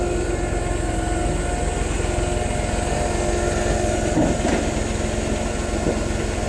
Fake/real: real